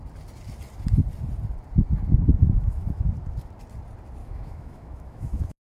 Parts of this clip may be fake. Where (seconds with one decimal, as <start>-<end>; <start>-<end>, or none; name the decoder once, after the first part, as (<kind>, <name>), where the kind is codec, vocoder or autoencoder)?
2.4-3.1 (autoencoder, DAC-VAE); 4.2-5.7